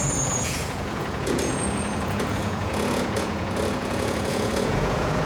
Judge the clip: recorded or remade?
remade